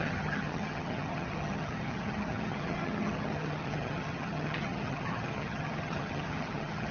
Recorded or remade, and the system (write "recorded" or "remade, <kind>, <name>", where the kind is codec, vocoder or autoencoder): remade, vocoder, HiFi-GAN